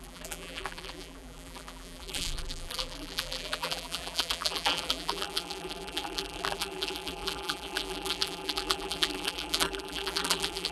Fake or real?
fake